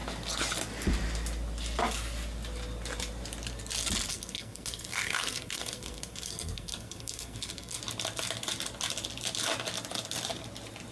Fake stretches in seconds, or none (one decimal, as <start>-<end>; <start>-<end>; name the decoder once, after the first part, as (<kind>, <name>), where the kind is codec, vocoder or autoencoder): 4.1-7.8 (codec, SNAC)